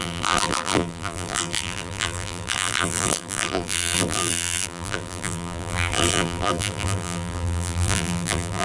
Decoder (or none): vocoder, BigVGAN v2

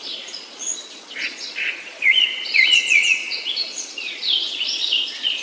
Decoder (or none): vocoder, Vocos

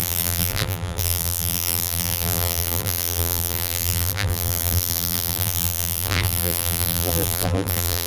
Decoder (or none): vocoder, BigVGAN v2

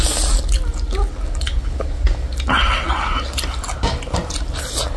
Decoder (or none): none